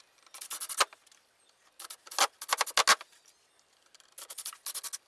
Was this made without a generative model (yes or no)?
yes